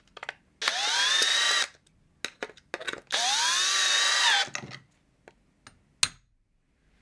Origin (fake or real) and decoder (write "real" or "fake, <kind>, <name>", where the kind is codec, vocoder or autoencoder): real